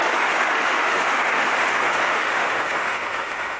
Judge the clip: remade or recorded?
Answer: remade